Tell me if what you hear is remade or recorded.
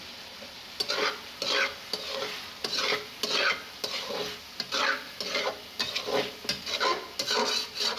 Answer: recorded